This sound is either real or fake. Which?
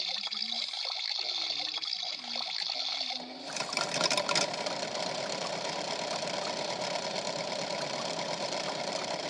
real